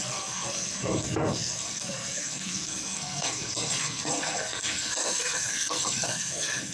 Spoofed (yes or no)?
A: yes